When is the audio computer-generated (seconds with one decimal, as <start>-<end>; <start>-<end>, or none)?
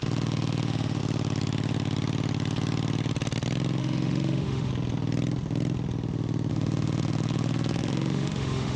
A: 0.0-1.0; 3.8-4.7; 6.5-8.8